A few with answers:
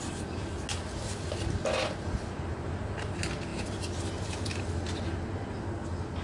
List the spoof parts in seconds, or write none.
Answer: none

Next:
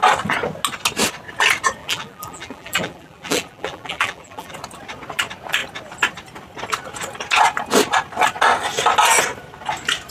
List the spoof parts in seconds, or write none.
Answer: 1.8-4.5 (vocoder, BigVGAN v2)

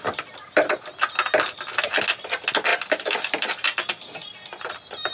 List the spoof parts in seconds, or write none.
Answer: 2.7-4.2 (vocoder, BigVGAN v2)

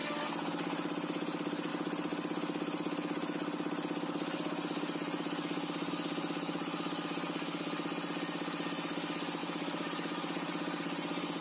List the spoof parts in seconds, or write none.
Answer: 9.4-11.4 (vocoder, BigVGAN v2)

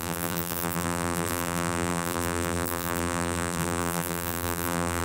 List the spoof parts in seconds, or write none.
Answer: 0.0-5.0 (vocoder, BigVGAN v2)

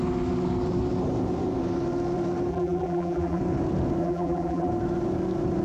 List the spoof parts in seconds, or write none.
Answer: 2.5-3.4 (vocoder, BigVGAN v2); 4.0-4.7